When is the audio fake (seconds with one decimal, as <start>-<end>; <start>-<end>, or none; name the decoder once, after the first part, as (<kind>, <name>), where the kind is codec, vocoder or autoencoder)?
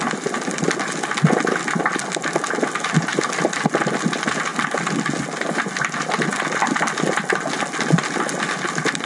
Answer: none